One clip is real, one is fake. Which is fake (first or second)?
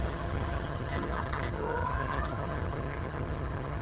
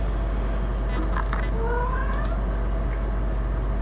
first